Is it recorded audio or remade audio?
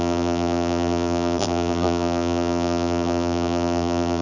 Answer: remade